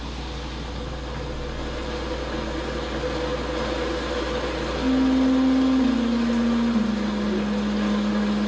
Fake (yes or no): no